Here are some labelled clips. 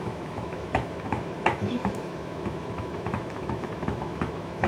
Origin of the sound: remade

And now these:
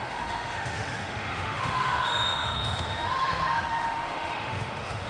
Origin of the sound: remade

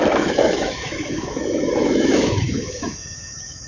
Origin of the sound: remade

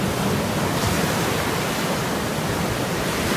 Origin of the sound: recorded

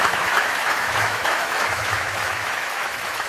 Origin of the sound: remade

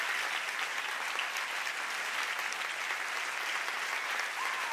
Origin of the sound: recorded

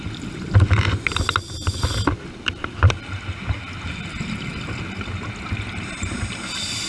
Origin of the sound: recorded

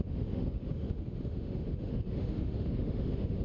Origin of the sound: remade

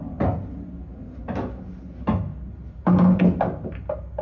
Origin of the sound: recorded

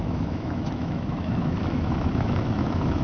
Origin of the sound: remade